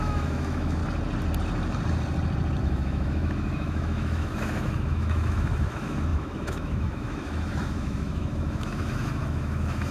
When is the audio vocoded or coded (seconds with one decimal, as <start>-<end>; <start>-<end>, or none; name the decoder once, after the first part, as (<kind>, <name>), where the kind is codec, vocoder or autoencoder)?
0.0-0.8 (autoencoder, DAC-VAE); 2.6-9.9